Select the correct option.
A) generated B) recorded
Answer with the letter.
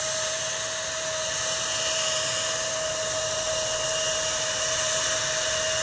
B